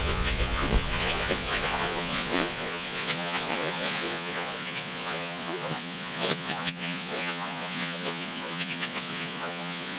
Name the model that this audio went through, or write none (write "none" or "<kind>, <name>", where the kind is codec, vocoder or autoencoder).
vocoder, Vocos